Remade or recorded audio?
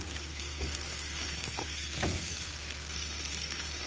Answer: remade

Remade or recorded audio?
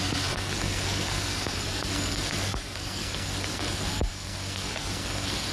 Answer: remade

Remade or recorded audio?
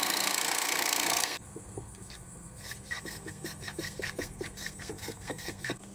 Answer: remade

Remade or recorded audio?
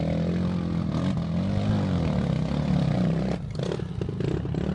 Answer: recorded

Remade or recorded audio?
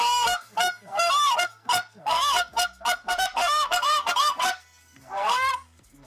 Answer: remade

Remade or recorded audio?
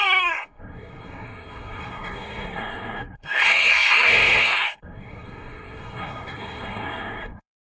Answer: remade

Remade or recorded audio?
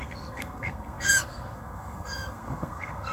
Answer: remade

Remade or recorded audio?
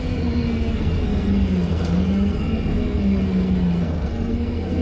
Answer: remade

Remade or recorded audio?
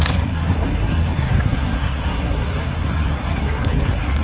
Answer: remade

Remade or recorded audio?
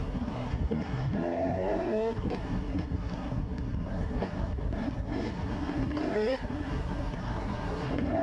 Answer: remade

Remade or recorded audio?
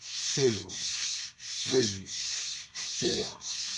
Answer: remade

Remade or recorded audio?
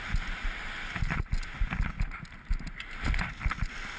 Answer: recorded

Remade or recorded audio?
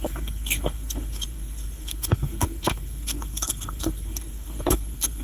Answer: remade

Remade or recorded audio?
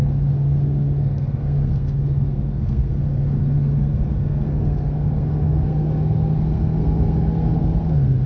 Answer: remade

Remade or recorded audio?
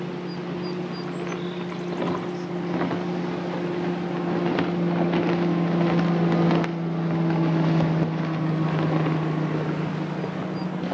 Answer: recorded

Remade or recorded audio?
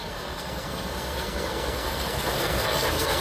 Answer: remade